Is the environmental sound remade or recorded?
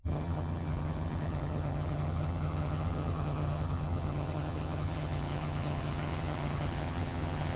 remade